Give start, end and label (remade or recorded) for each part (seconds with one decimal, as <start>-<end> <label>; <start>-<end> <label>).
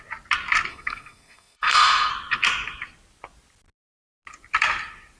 0.0-0.7 recorded; 0.7-2.1 remade; 2.1-5.2 recorded